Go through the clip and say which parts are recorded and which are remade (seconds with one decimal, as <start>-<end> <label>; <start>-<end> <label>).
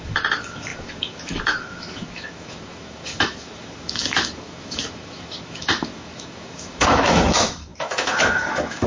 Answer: 0.0-8.9 remade